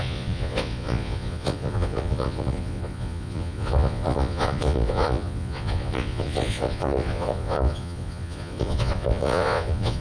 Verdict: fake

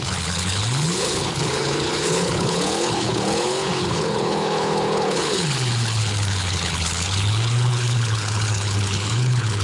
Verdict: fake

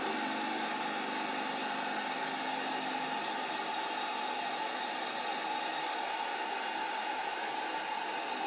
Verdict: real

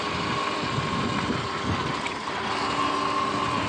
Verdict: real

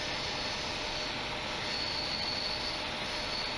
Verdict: real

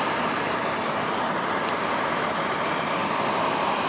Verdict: fake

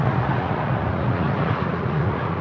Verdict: fake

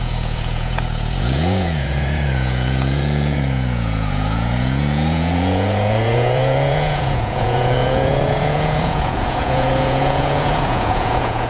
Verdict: fake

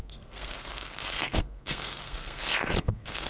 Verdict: fake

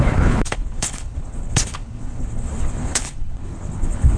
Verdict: fake